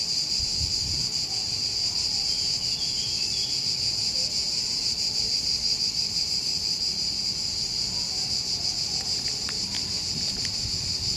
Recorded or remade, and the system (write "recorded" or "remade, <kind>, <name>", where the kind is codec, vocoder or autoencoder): remade, vocoder, BigVGAN v2